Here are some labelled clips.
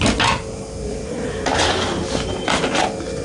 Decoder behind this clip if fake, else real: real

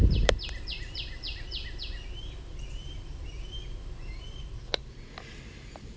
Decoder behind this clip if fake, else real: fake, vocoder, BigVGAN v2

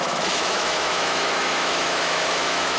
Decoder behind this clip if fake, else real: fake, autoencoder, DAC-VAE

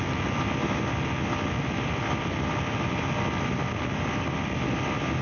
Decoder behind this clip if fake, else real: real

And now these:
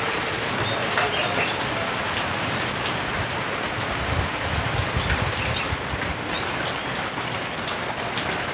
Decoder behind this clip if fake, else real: real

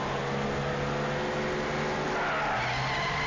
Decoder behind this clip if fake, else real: real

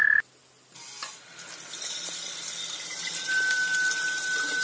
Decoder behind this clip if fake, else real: real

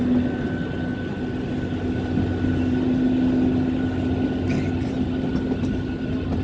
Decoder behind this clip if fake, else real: real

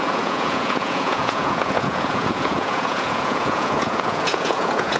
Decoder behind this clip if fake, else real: fake, vocoder, Vocos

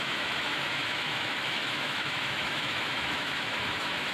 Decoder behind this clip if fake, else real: fake, autoencoder, DAC-VAE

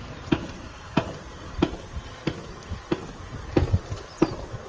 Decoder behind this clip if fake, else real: real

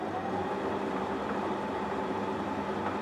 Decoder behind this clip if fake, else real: fake, vocoder, BigVGAN v2